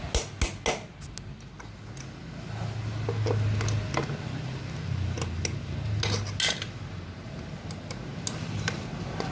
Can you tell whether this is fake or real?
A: real